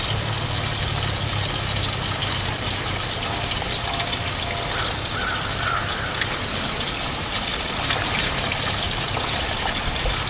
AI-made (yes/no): no